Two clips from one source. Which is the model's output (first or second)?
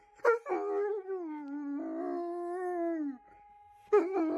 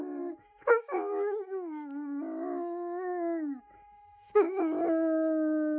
second